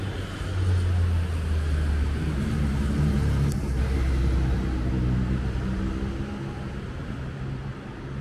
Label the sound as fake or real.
real